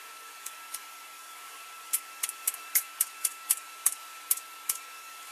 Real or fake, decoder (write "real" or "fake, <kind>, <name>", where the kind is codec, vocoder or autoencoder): fake, codec, DAC